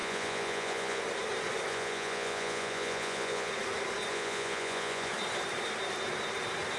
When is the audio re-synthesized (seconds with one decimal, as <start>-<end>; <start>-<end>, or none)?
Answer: 0.0-1.0; 1.7-3.5; 4.1-5.1